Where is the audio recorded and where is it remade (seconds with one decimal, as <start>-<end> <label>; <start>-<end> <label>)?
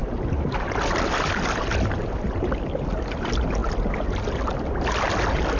0.0-5.6 recorded